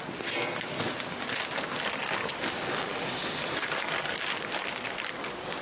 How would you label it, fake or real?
real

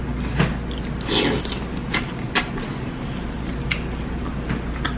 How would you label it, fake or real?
real